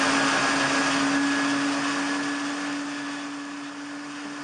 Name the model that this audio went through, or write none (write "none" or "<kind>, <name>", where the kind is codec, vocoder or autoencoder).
none